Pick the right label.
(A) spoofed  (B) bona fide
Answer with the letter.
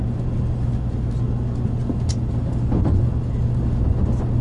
B